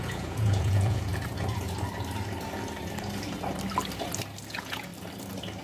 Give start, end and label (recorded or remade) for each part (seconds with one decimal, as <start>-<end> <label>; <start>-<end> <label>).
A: 0.0-1.1 remade; 1.1-4.5 recorded; 4.5-4.9 remade; 4.9-5.6 recorded